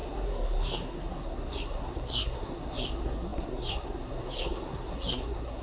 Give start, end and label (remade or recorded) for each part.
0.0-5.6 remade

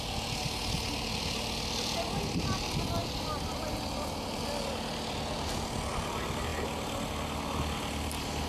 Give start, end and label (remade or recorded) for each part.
0.0-3.0 recorded; 3.0-4.4 remade; 4.4-8.5 recorded

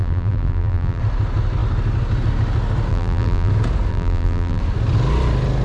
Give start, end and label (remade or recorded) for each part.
0.0-1.0 remade; 1.0-2.9 recorded; 2.9-3.5 remade; 3.5-3.9 recorded; 3.9-4.6 remade; 4.6-5.6 recorded